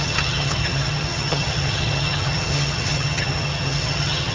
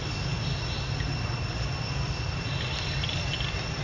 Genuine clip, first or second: second